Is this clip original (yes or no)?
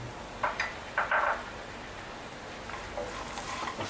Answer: yes